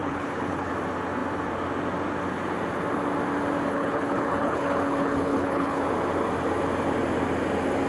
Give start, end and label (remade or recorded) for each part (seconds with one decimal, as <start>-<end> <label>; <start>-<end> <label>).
0.0-0.7 remade; 0.7-3.7 recorded; 3.7-5.8 remade; 5.8-7.9 recorded

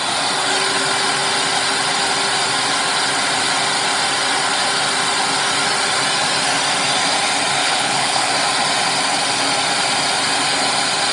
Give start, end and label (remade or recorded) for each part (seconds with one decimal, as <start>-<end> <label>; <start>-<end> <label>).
0.0-7.6 recorded; 7.6-8.3 remade; 8.3-11.1 recorded